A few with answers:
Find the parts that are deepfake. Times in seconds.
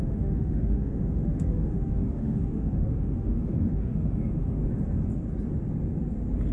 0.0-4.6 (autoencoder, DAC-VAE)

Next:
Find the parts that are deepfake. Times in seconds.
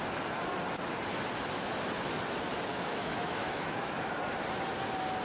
2.7-4.1 (autoencoder, DAC-VAE)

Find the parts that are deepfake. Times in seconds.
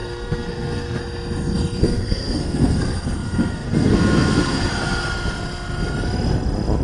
0.0-1.0 (codec, SNAC); 1.8-4.7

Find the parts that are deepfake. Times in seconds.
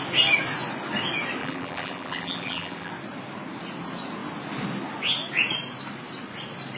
1.4-2.9 (vocoder, BigVGAN v2)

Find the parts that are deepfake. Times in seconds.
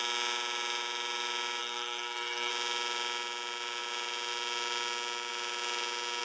1.6-2.5 (codec, SNAC)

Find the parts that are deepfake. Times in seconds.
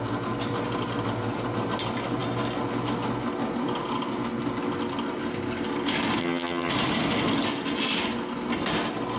6.2-6.7 (vocoder, HiFi-GAN)